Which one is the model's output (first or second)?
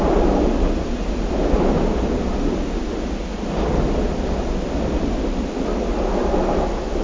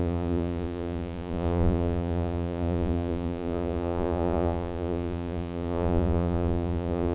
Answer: second